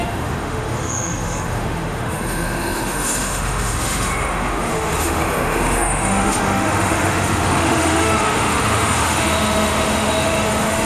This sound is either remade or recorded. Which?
remade